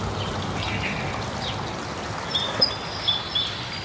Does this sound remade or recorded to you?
recorded